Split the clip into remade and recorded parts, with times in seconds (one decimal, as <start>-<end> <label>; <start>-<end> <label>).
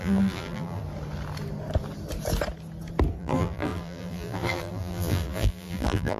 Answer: 0.0-0.8 remade; 0.8-3.2 recorded; 3.2-6.2 remade